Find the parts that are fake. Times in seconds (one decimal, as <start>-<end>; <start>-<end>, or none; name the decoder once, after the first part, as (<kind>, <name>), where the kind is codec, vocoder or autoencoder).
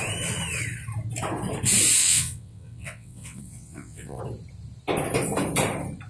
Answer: 2.0-4.2 (vocoder, WaveNeXt)